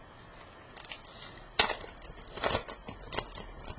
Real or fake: real